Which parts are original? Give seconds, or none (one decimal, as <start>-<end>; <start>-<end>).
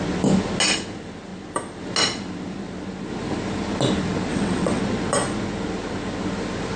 0.0-4.3; 4.8-6.8